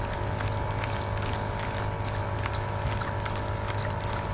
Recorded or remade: recorded